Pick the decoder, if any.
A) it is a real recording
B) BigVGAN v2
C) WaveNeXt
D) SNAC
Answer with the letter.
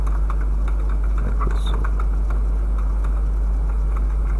A